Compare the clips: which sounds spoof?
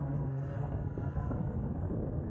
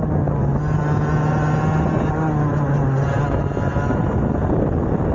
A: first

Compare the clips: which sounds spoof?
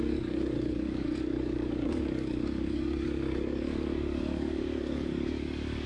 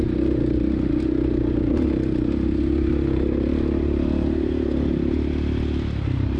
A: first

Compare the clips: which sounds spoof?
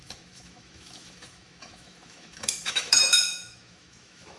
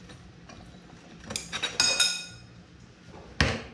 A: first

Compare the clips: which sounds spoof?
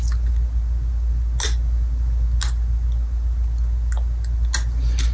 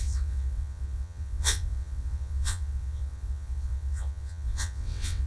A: second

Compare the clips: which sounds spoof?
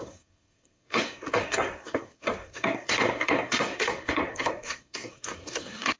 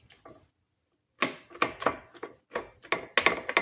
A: first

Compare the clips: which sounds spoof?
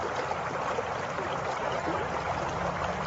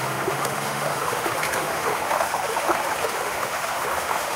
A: second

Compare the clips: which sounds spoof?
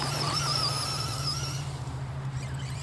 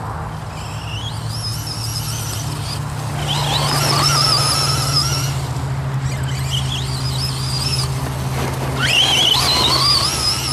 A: first